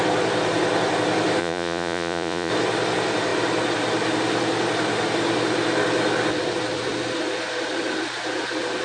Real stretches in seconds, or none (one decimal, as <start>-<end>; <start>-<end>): 0.0-1.4; 2.5-8.8